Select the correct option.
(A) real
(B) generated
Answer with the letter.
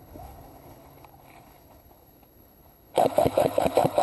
B